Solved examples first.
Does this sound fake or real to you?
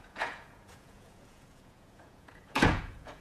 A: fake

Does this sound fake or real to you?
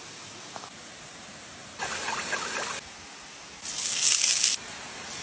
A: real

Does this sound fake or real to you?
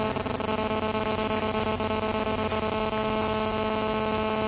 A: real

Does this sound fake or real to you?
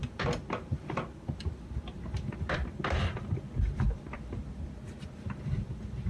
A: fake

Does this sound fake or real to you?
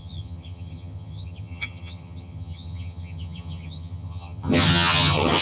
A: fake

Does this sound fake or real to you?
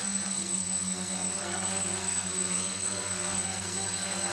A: fake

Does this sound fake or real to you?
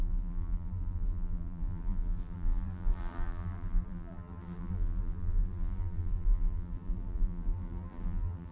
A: fake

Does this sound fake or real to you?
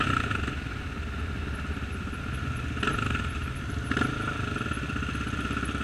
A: real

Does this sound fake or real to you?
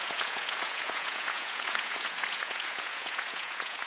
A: fake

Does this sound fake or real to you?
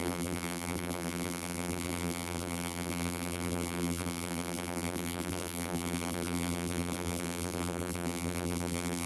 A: fake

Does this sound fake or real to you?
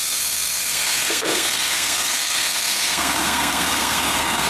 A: fake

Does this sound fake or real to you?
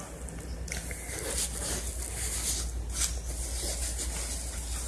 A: real